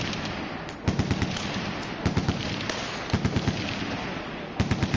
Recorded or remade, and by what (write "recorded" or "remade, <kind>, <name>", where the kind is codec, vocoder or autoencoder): recorded